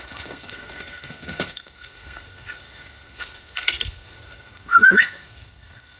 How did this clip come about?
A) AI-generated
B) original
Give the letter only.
A